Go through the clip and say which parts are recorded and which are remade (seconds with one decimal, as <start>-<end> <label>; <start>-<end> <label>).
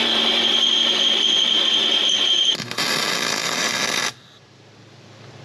0.0-5.4 remade